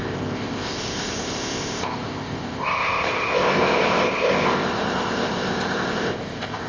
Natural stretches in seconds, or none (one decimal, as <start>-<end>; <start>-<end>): none